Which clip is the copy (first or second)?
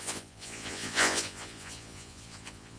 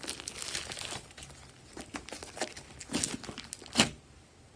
first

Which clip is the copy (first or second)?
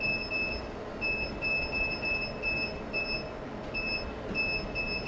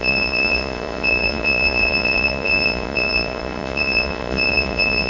second